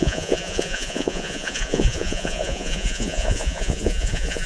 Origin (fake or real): fake